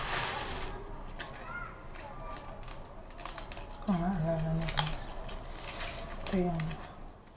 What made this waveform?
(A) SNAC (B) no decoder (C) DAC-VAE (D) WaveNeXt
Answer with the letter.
B